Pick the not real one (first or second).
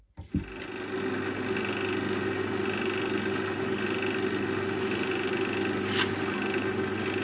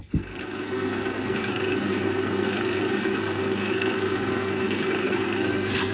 second